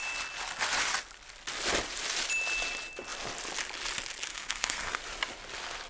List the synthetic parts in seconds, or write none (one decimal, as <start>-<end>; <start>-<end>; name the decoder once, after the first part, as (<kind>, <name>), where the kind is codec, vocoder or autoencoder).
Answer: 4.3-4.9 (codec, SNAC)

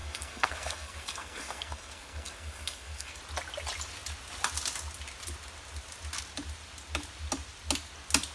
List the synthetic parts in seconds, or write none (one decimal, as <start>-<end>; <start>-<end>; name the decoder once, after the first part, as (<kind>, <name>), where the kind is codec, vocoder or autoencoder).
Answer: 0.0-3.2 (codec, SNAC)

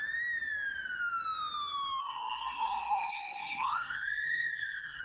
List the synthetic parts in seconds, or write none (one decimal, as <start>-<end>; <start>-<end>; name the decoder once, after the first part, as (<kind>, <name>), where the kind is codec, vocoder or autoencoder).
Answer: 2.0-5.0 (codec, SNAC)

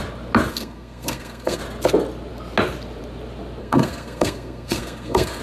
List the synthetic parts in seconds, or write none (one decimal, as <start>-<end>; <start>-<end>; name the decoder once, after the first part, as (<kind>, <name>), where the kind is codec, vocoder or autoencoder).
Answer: 0.5-1.6 (codec, SNAC); 3.6-5.4